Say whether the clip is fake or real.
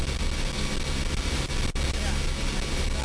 real